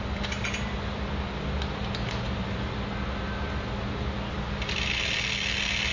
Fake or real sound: real